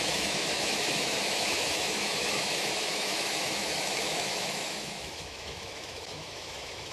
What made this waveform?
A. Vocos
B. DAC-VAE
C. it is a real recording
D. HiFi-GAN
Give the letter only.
B